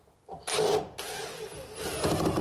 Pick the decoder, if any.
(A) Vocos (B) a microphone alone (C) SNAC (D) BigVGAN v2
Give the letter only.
B